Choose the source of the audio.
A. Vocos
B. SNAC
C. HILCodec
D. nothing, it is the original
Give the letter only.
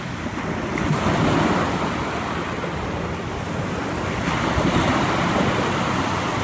D